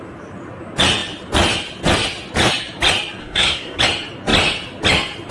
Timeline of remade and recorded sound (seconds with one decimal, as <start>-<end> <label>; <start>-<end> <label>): 0.0-3.2 recorded; 3.2-3.8 remade; 3.8-5.3 recorded